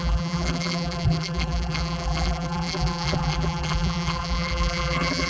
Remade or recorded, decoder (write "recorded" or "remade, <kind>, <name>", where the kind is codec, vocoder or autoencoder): remade, vocoder, BigVGAN v2